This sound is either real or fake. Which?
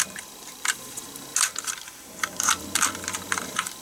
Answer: real